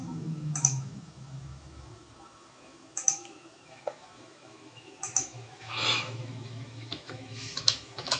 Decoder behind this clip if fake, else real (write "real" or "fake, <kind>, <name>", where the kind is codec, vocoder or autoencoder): fake, autoencoder, DAC-VAE